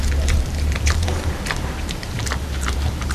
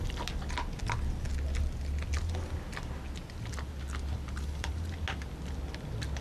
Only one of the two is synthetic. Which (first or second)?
first